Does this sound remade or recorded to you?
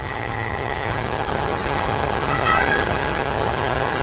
remade